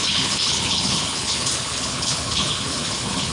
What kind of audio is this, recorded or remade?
remade